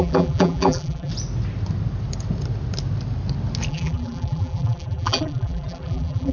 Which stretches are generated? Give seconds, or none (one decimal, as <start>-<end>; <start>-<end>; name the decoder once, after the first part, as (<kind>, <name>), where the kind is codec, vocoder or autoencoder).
0.0-1.1 (vocoder, BigVGAN v2); 3.7-6.3